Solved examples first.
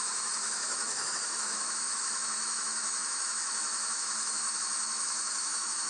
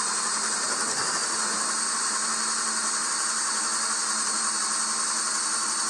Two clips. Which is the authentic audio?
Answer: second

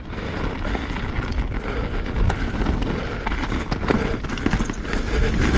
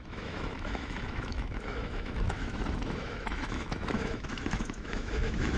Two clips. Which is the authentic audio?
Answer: first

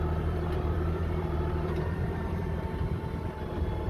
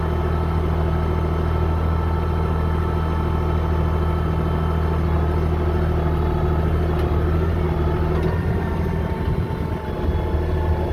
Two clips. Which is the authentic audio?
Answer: second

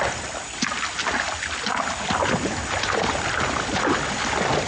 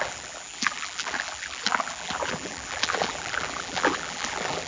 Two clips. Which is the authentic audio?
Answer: first